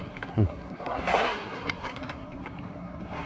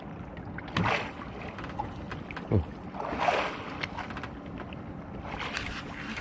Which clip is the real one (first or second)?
second